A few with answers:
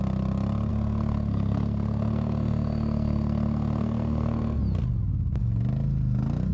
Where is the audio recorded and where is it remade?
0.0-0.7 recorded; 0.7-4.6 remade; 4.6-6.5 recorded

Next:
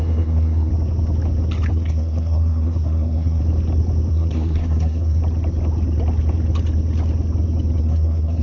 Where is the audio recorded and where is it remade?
0.0-0.7 remade; 0.7-1.7 recorded; 1.7-3.4 remade; 3.4-4.1 recorded; 4.1-5.2 remade; 5.2-7.8 recorded; 7.8-8.4 remade

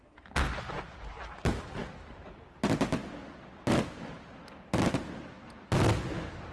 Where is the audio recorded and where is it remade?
0.0-6.5 recorded

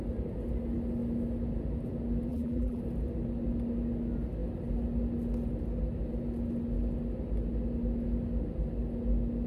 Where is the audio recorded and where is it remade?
0.0-2.3 recorded; 2.3-2.8 remade; 2.8-9.5 recorded

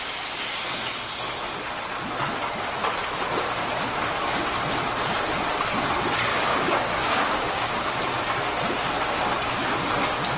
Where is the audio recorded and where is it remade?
0.0-6.3 recorded; 6.3-8.0 remade; 8.0-10.4 recorded

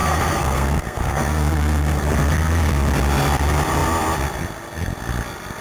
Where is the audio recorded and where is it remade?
0.0-2.0 remade; 2.0-5.6 recorded

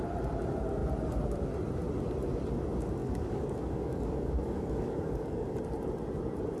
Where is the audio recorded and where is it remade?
0.0-3.0 recorded; 3.0-5.6 remade; 5.6-6.6 recorded

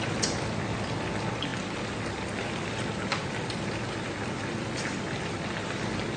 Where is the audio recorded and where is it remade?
0.0-6.2 remade